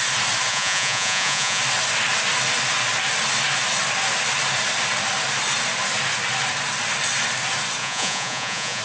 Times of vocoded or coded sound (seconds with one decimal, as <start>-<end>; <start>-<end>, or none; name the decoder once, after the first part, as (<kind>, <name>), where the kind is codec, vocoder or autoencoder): 0.5-1.6 (vocoder, Vocos); 7.8-8.8